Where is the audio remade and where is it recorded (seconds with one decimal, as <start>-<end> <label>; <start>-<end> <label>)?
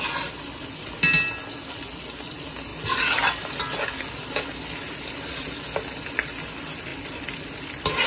0.0-8.1 recorded